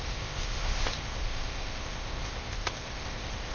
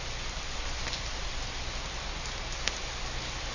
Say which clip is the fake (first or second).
first